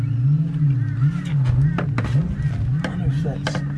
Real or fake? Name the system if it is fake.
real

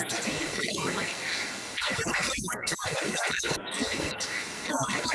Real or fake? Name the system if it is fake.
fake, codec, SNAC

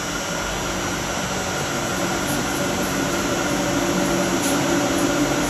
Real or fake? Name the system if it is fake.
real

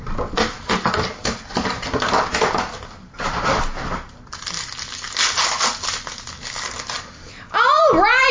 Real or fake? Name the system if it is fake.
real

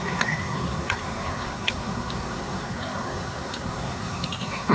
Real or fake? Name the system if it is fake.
fake, codec, SNAC